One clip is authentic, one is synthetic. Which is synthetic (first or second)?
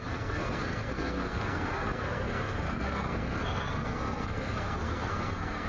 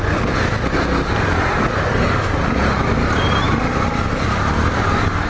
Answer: first